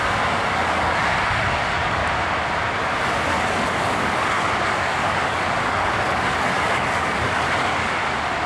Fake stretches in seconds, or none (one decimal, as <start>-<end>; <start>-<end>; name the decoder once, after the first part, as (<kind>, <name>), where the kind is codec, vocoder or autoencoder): 0.0-2.0 (codec, DAC); 3.3-8.0